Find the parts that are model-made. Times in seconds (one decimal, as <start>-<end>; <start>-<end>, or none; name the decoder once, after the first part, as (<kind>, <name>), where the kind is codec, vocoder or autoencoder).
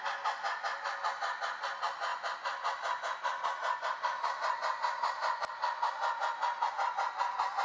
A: none